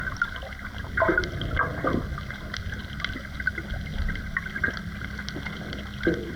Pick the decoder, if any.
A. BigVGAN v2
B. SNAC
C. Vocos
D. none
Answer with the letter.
D